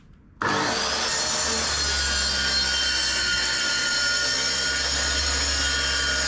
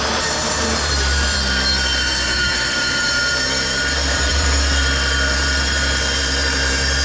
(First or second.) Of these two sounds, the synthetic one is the second